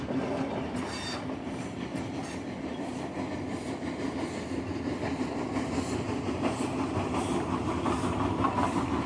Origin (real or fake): real